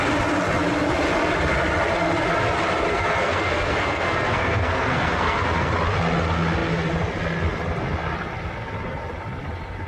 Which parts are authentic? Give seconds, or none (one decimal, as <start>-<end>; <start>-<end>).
0.0-2.9; 5.7-9.9